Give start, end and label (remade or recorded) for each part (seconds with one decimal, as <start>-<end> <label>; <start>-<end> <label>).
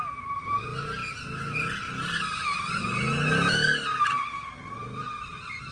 0.0-4.8 recorded; 4.8-5.3 remade; 5.3-5.7 recorded